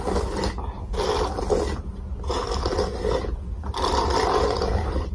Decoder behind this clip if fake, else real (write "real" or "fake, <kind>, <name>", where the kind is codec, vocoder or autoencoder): real